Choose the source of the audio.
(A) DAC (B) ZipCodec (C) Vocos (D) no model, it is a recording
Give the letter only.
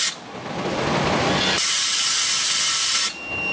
D